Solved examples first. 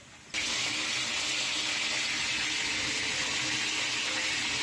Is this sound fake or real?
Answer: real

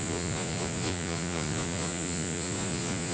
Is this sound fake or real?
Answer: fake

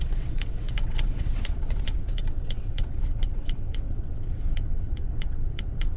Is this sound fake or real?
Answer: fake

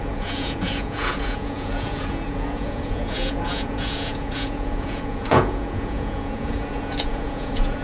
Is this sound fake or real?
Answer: fake